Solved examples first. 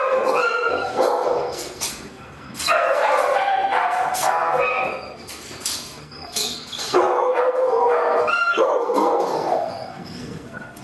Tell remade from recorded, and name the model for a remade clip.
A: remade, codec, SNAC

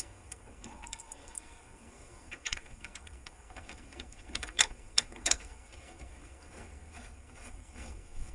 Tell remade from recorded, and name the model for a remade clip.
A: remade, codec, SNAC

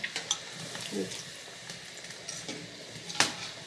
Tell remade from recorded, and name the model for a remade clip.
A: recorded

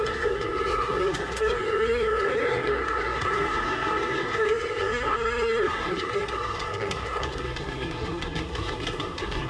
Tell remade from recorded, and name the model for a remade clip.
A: remade, codec, SNAC